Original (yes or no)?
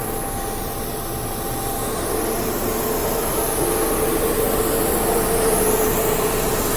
yes